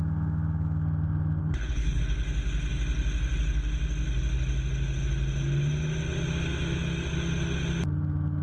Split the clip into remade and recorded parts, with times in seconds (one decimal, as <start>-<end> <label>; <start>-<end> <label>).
0.0-1.4 recorded; 1.4-2.0 remade; 2.0-8.4 recorded